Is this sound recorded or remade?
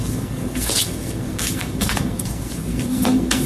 remade